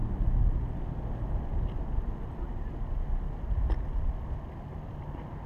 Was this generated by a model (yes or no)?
no